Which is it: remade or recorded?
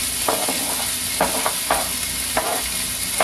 recorded